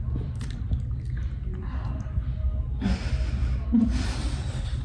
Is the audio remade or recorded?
recorded